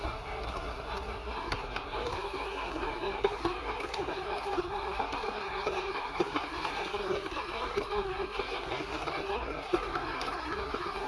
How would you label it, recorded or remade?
remade